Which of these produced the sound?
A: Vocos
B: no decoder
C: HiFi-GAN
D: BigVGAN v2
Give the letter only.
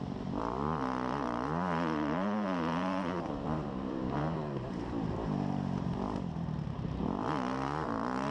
D